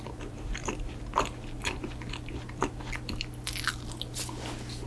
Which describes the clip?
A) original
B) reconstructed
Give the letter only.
A